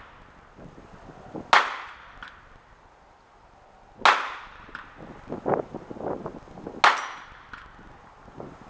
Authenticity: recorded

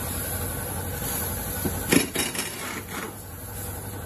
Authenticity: recorded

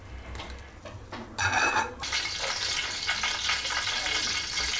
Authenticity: recorded